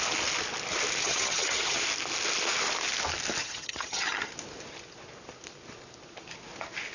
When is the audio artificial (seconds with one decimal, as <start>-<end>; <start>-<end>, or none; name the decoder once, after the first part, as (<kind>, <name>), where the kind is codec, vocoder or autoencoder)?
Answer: 1.0-1.8 (vocoder, HiFi-GAN); 3.4-4.3